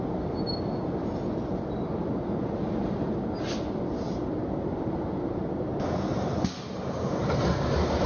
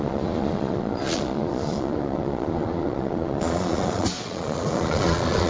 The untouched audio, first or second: first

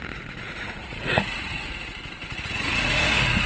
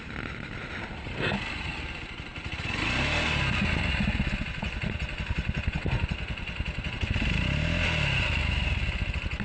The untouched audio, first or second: second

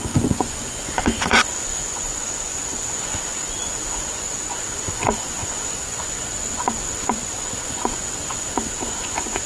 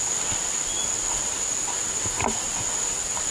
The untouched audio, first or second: second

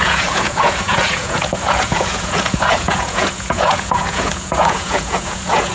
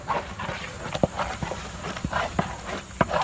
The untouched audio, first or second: second